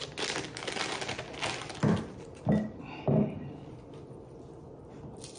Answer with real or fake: real